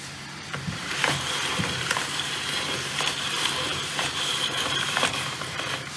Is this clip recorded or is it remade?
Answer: remade